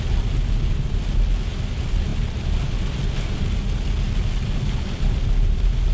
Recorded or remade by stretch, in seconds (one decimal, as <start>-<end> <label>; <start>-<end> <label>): 0.0-5.9 recorded